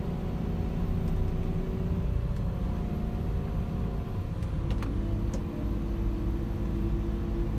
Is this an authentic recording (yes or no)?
yes